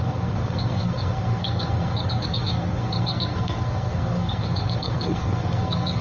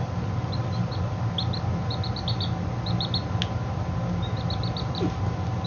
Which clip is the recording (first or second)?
second